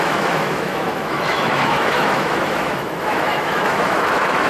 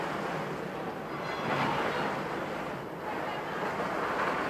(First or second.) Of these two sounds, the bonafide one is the second